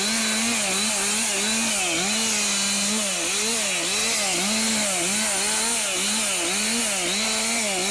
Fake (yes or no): no